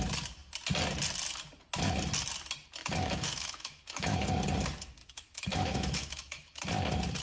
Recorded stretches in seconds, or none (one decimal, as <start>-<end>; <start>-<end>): 0.0-2.8; 4.3-5.0; 6.6-7.2